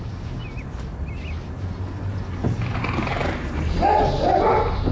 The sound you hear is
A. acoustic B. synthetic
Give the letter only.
A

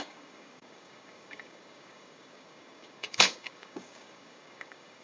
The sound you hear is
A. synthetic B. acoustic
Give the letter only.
A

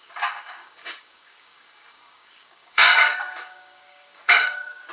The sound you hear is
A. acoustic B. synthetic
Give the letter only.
B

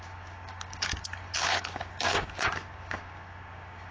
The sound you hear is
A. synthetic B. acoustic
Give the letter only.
A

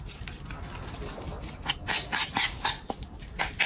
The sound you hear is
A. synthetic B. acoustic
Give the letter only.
B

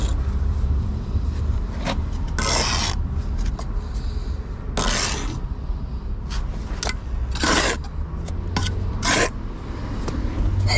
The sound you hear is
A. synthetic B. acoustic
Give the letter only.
B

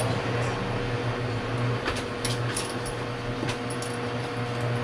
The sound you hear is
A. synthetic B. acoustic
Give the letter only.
B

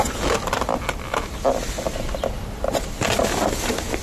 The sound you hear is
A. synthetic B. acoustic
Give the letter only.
B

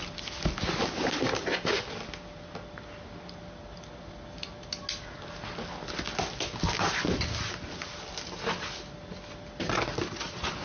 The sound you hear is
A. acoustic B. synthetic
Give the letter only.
A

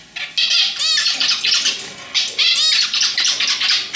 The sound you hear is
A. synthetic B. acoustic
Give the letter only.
B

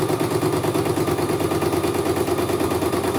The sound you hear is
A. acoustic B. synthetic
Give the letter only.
A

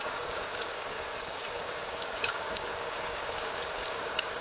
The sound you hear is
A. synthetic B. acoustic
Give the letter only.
A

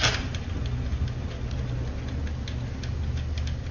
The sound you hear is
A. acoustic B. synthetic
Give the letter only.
A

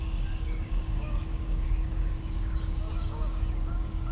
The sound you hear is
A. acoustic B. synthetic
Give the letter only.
B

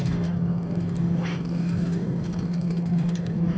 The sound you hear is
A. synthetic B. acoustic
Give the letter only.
A